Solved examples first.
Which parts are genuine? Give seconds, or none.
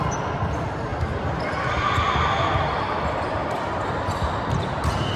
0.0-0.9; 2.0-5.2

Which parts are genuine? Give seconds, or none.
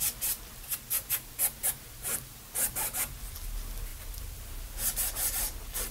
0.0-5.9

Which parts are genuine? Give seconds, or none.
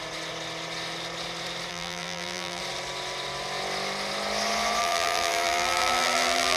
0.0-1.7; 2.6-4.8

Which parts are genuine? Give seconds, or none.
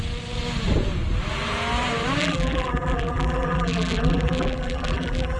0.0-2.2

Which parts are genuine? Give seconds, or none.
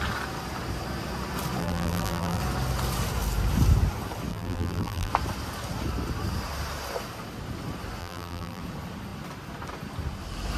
0.0-1.6; 2.4-4.3; 5.1-8.0; 8.6-10.6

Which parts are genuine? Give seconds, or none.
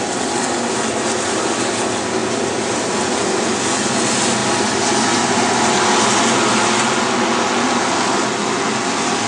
0.0-2.2; 3.2-9.3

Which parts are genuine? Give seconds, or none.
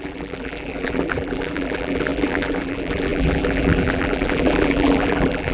none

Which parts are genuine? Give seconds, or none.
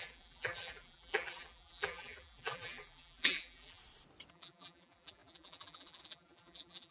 3.8-4.3